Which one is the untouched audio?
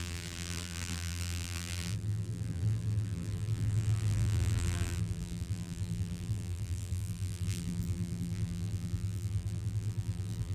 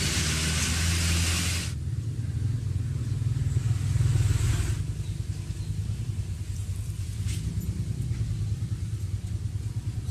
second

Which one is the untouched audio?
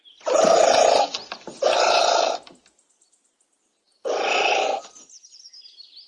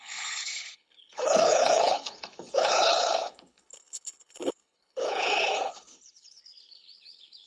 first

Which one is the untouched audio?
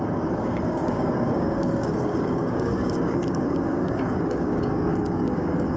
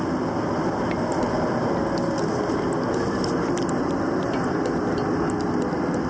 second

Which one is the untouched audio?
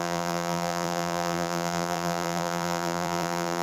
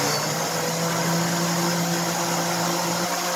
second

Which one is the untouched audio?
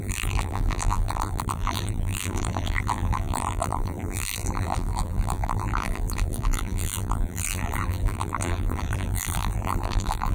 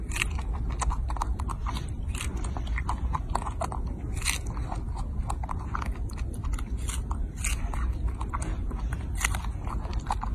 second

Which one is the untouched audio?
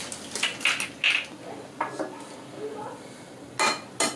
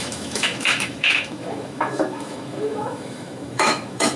first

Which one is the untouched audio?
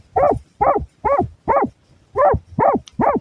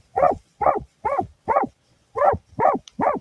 first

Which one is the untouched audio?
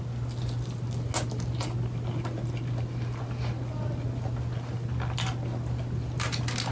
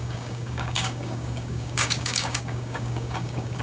first